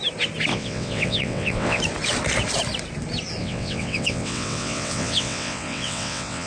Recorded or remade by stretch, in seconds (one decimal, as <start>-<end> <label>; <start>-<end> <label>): 0.0-0.5 recorded; 0.5-1.8 remade; 1.8-3.4 recorded; 3.4-6.5 remade